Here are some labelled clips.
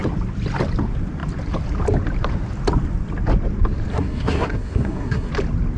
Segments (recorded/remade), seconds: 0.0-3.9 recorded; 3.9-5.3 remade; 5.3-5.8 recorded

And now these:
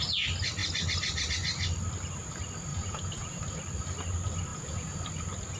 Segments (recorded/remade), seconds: 0.0-2.7 recorded; 2.7-3.4 remade; 3.4-4.5 recorded; 4.5-5.0 remade; 5.0-5.6 recorded

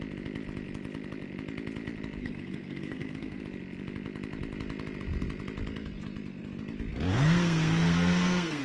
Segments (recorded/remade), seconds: 0.0-2.2 recorded; 2.2-3.4 remade; 3.4-7.1 recorded; 7.1-8.6 remade